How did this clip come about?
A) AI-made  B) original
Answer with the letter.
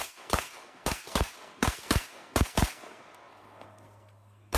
A